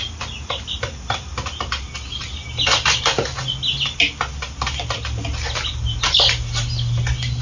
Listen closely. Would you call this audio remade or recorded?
recorded